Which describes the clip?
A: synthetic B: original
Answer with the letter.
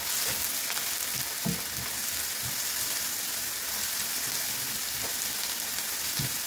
B